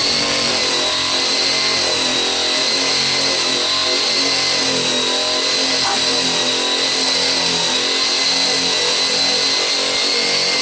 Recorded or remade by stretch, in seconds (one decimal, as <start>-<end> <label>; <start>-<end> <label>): 0.0-10.6 recorded

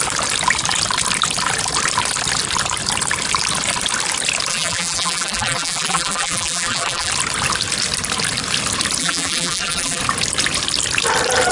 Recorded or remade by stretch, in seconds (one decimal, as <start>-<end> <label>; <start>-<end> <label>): 0.0-4.5 recorded; 4.5-7.1 remade; 7.1-9.0 recorded; 9.0-10.0 remade; 10.0-11.5 recorded

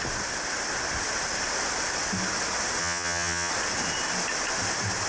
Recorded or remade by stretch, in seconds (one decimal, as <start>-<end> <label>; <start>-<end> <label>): 0.0-2.8 recorded; 2.8-3.5 remade; 3.5-5.1 recorded

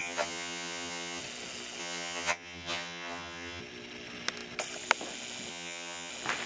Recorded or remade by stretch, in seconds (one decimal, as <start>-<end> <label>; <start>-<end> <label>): 0.0-1.2 remade; 1.2-1.8 recorded; 1.8-3.6 remade; 3.6-5.5 recorded; 5.5-6.1 remade; 6.1-6.5 recorded

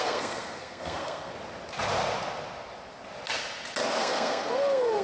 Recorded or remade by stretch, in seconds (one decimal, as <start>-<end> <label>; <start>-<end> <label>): 0.0-1.3 remade; 1.3-4.0 recorded; 4.0-5.0 remade